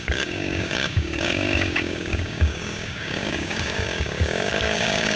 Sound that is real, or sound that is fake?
fake